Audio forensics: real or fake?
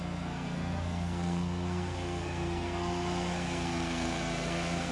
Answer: fake